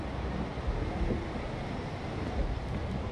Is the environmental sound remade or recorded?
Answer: recorded